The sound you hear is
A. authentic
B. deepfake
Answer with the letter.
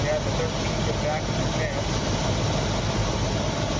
A